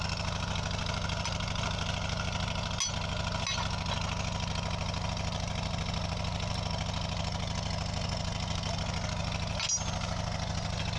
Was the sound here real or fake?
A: real